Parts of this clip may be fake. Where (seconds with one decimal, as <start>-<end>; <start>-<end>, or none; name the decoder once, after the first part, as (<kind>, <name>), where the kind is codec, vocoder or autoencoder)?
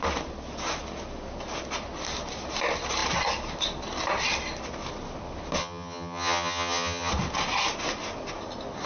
5.6-7.1 (vocoder, HiFi-GAN)